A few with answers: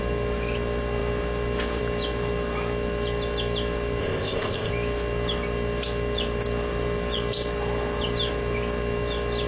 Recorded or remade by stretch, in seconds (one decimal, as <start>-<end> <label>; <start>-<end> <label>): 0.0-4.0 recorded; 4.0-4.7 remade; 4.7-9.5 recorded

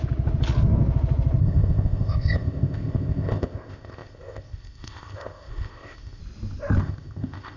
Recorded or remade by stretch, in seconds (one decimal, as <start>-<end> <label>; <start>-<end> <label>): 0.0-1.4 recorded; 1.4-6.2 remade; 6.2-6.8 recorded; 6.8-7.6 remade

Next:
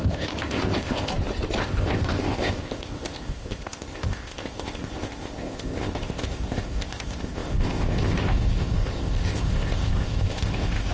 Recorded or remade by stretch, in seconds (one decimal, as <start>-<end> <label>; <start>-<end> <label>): 0.0-1.1 remade; 1.1-1.6 recorded; 1.6-10.9 remade

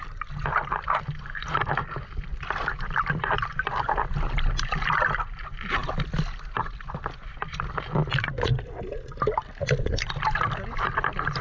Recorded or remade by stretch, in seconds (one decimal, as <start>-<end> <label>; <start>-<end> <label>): 0.0-11.4 recorded

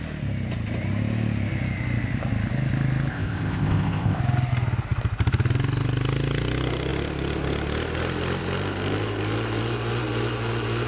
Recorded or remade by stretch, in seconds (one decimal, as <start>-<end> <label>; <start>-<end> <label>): 0.0-3.1 recorded; 3.1-4.2 remade; 4.2-10.9 recorded

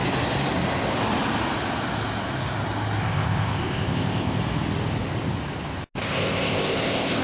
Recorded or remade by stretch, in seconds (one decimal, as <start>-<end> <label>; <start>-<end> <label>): 0.0-3.0 recorded; 3.0-4.4 remade; 4.4-6.0 recorded; 6.0-7.2 remade

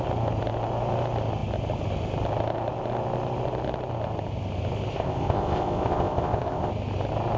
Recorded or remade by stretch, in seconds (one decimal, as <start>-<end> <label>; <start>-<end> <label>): 0.0-4.9 recorded; 4.9-6.7 remade; 6.7-7.4 recorded